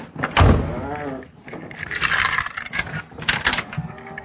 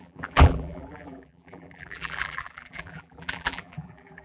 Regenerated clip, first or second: second